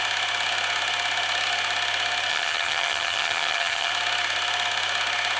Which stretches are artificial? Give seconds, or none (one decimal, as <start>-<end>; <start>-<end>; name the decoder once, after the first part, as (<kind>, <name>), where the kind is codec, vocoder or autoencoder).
2.3-3.9 (vocoder, HiFi-GAN)